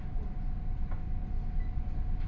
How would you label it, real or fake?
real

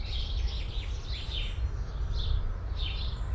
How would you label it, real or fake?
real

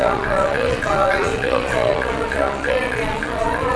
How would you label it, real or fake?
fake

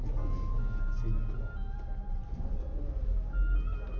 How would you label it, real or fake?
real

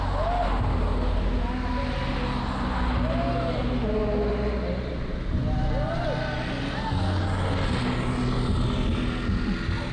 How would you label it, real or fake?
real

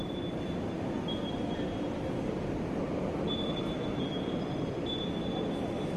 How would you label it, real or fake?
real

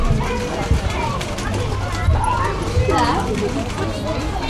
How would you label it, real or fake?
real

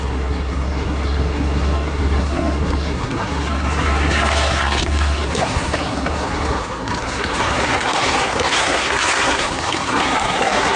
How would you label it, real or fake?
fake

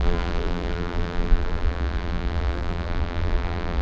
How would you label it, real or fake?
fake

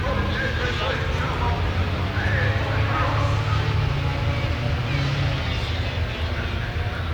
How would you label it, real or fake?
real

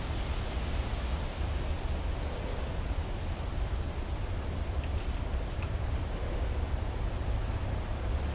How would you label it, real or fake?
real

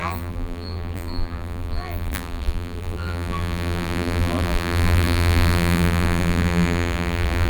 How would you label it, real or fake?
fake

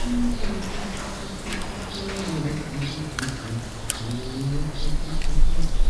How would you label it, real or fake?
real